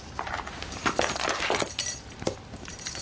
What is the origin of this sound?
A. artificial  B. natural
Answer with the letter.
A